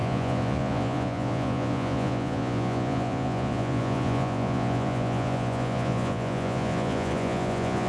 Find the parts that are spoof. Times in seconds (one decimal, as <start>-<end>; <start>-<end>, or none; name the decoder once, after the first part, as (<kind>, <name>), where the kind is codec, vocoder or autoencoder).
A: 0.0-7.9 (vocoder, Vocos)